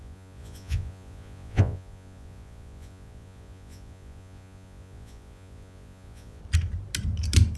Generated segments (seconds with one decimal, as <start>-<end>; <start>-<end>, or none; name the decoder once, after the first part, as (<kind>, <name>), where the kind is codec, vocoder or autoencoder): 0.0-6.4 (vocoder, Vocos)